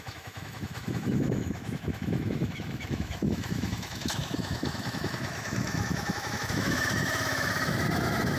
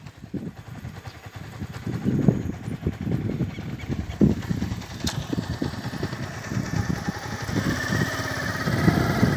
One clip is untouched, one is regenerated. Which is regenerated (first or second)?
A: first